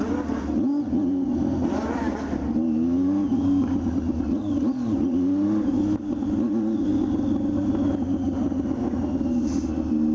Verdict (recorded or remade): recorded